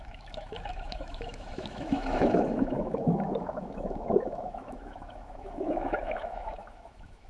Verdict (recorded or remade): remade